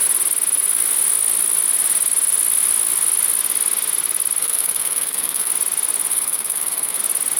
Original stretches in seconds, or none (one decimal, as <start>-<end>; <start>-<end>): 0.0-4.4; 5.5-6.1; 7.0-7.4

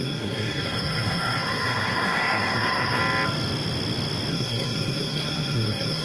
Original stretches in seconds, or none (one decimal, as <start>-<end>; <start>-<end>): 3.0-4.3